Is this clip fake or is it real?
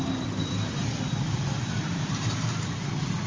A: real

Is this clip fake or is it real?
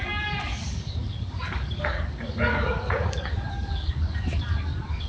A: fake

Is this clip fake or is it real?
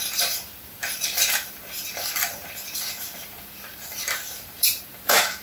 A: fake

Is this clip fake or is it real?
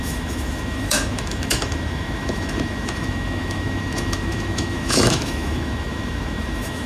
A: fake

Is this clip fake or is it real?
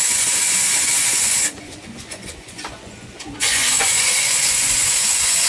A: fake